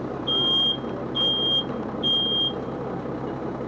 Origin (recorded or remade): recorded